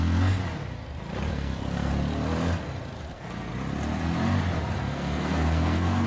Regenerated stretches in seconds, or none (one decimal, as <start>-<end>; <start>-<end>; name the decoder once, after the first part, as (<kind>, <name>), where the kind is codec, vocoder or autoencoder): 0.0-0.4 (codec, SNAC); 1.3-1.9; 3.1-3.5; 4.8-6.1